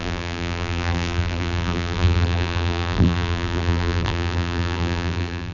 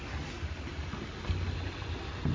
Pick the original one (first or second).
second